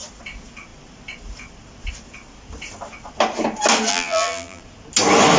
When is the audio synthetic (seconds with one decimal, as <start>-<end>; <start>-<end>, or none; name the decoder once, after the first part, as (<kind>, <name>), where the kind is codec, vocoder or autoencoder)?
3.9-4.6 (vocoder, BigVGAN v2)